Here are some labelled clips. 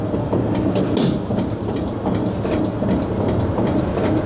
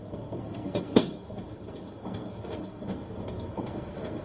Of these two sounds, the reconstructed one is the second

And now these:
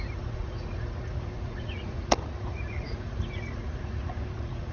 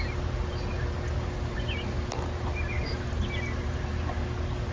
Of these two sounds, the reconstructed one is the first